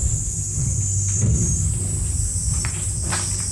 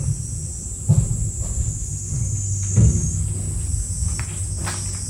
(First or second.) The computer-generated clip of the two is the first